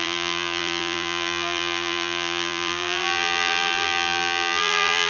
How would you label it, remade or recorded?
remade